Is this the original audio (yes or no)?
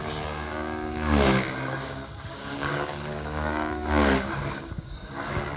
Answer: no